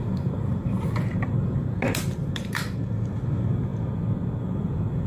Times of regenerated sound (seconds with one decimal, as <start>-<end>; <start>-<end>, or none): 0.0-3.7; 4.4-5.1